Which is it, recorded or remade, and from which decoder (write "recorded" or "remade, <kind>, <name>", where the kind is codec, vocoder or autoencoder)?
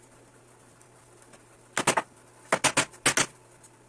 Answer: recorded